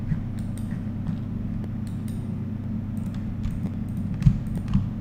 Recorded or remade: recorded